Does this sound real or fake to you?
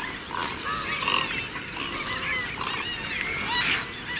real